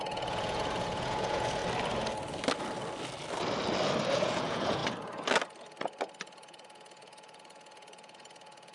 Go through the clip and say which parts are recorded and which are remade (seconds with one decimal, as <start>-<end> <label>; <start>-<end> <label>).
0.0-1.6 remade; 1.6-4.1 recorded; 4.1-4.8 remade; 4.8-6.2 recorded; 6.2-8.7 remade